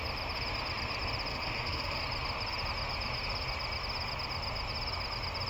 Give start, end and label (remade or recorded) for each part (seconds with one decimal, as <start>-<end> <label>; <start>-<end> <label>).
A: 0.0-1.3 recorded; 1.3-2.0 remade; 2.0-5.5 recorded